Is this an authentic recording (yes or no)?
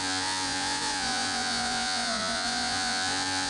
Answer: no